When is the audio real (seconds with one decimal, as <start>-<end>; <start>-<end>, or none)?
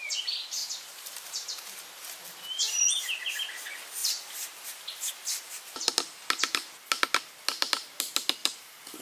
0.0-0.6; 2.2-8.4